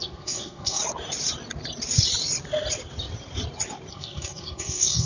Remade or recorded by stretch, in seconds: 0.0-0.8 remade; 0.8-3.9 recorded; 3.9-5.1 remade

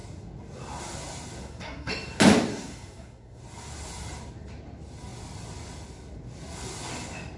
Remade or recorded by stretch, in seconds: 0.0-1.4 recorded; 1.4-1.9 remade; 1.9-2.5 recorded; 2.5-3.4 remade; 3.4-7.4 recorded

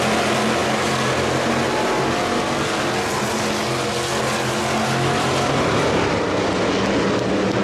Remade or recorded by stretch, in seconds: 0.0-7.6 recorded

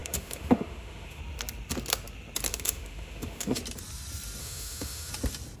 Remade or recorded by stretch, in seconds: 0.0-1.2 remade; 1.2-2.5 recorded; 2.5-3.6 remade; 3.6-4.4 recorded; 4.4-5.1 remade; 5.1-5.6 recorded

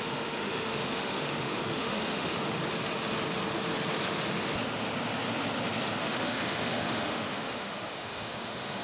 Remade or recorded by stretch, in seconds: 0.0-2.6 remade; 2.6-6.0 recorded; 6.0-8.8 remade

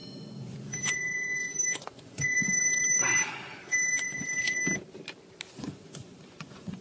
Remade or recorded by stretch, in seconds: 0.0-4.6 remade; 4.6-5.5 recorded; 5.5-6.8 remade

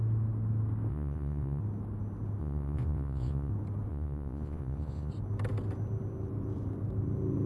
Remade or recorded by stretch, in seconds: 0.0-0.9 recorded; 0.9-1.6 remade; 1.6-2.4 recorded; 2.4-3.5 remade; 3.5-3.9 recorded; 3.9-5.1 remade; 5.1-7.5 recorded